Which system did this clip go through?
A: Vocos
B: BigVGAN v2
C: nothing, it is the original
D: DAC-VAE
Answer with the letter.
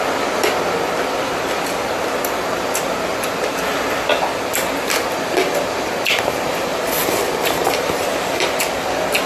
C